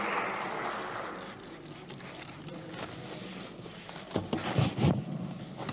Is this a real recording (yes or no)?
yes